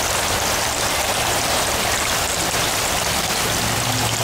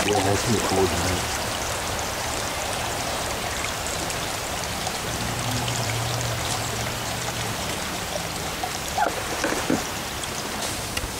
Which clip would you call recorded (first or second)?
first